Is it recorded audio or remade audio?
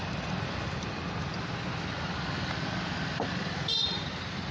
recorded